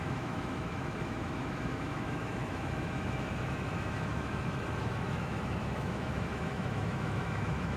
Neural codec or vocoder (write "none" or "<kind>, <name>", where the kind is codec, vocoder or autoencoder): autoencoder, DAC-VAE